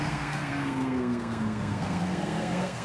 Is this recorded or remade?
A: remade